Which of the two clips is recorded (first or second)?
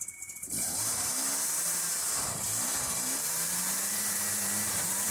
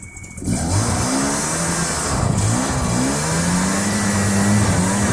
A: second